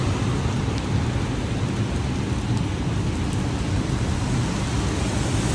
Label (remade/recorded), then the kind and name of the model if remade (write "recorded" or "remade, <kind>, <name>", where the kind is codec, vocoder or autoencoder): recorded